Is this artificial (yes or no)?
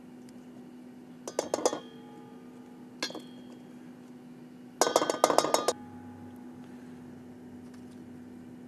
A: no